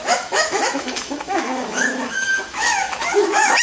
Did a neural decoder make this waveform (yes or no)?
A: yes